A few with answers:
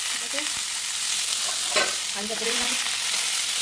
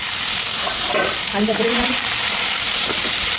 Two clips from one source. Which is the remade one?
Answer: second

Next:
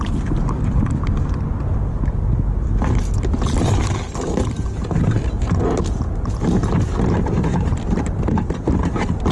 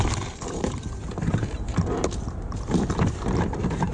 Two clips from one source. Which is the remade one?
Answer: second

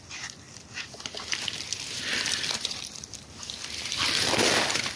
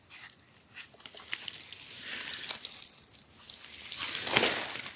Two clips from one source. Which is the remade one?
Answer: first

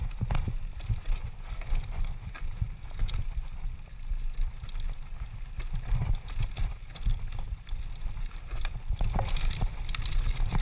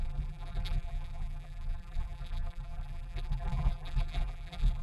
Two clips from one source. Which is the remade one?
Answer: second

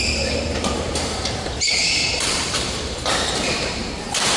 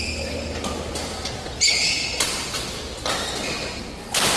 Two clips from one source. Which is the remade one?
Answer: first